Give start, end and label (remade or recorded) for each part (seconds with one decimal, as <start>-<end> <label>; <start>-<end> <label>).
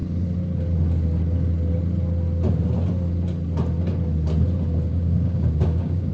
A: 0.0-4.9 recorded; 4.9-6.1 remade